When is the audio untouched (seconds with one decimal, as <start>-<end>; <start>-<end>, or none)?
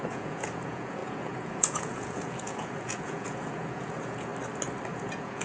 4.3-4.9